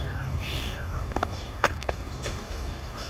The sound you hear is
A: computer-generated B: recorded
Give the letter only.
A